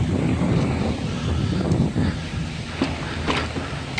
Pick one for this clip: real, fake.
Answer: real